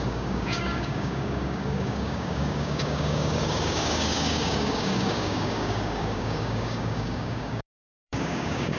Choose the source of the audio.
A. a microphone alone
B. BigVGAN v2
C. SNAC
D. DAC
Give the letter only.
D